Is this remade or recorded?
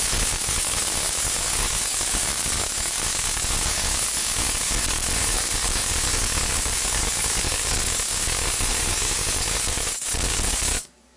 remade